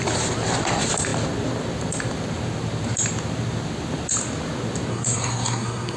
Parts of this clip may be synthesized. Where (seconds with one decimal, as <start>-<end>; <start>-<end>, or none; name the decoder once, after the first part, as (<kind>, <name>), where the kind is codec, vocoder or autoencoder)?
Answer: 4.9-6.0 (codec, SNAC)